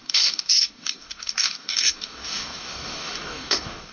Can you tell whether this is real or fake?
fake